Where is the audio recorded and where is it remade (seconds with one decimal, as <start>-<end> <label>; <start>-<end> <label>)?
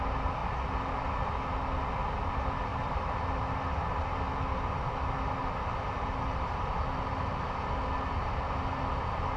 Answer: 0.0-9.4 recorded